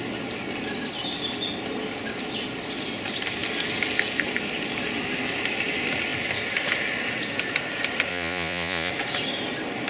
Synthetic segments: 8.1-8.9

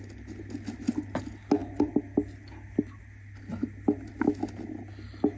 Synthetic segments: none